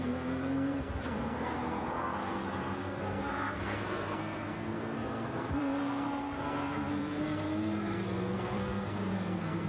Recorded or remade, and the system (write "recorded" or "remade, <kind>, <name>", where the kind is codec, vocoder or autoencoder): remade, codec, SNAC